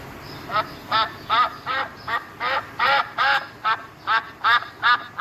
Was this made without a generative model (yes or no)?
yes